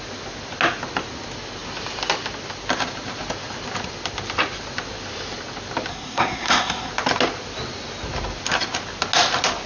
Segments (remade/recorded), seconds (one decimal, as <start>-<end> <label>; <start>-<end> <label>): 0.0-5.9 recorded; 5.9-6.9 remade; 6.9-9.7 recorded